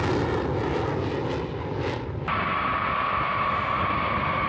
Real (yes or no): yes